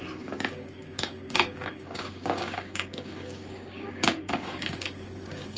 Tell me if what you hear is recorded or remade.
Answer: remade